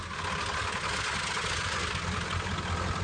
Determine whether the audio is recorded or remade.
recorded